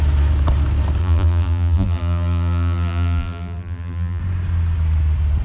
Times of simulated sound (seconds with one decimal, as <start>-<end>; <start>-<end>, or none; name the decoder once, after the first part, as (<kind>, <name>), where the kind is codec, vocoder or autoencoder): 1.0-4.2 (vocoder, BigVGAN v2)